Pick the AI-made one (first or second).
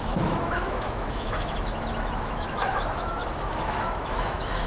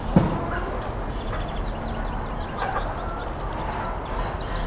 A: first